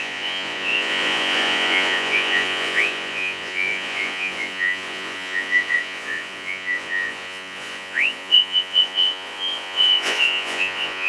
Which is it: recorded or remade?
remade